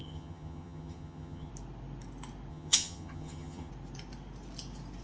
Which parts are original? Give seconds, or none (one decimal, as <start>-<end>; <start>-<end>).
1.5-2.5; 3.7-5.0